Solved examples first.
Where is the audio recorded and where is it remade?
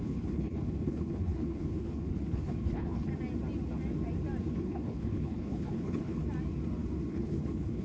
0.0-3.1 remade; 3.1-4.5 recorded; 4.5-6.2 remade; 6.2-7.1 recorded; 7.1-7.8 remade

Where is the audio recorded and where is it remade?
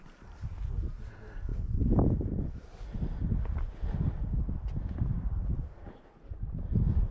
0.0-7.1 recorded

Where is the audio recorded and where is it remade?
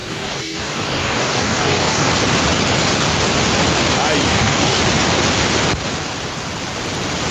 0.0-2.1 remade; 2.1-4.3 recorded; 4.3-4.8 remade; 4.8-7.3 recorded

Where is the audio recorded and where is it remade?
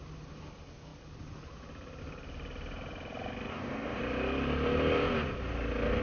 0.0-3.5 recorded; 3.5-4.0 remade; 4.0-6.0 recorded